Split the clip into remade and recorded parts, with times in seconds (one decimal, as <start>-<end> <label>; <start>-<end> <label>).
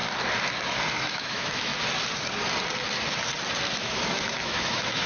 0.0-0.9 recorded; 0.9-1.7 remade; 1.7-3.8 recorded; 3.8-5.1 remade